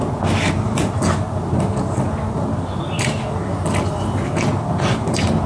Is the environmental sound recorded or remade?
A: recorded